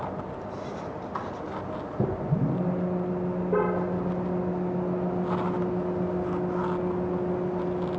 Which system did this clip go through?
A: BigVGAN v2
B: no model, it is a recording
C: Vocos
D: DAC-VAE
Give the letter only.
B